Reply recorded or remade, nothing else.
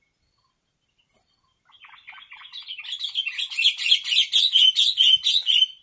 recorded